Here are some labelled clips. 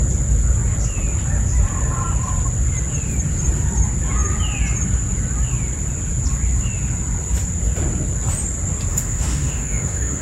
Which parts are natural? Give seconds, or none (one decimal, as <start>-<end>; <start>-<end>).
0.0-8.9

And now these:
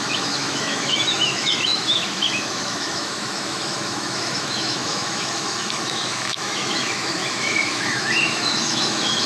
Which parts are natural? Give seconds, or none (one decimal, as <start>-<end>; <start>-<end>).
none

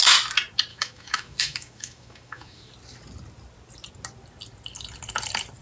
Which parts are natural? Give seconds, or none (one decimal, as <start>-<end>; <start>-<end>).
0.0-0.7; 2.7-5.6

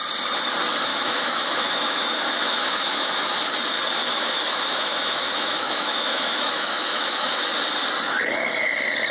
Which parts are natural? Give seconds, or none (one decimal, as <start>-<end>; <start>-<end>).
0.0-0.9; 3.3-4.0; 7.5-9.1